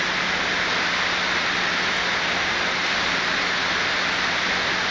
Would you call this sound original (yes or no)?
yes